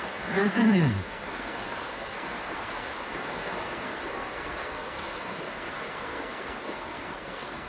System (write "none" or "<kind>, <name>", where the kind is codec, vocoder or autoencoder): codec, SNAC